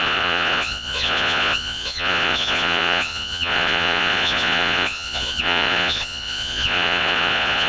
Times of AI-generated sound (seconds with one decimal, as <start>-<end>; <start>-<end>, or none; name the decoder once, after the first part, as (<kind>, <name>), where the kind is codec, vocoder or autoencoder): 0.0-7.7 (vocoder, Vocos)